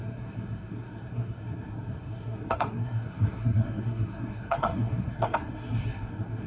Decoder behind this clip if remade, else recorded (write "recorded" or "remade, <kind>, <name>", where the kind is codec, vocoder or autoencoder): remade, codec, SNAC